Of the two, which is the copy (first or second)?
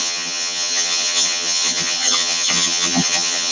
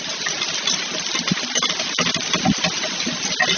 first